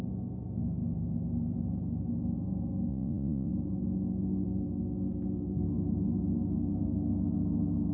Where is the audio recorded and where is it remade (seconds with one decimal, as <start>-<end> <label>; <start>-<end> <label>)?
0.0-2.9 recorded; 2.9-3.5 remade; 3.5-7.9 recorded